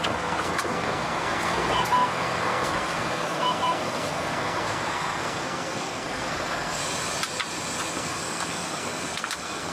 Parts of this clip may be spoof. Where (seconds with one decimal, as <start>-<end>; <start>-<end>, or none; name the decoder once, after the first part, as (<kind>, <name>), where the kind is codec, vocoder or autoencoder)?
0.0-6.8 (codec, SNAC); 7.9-9.7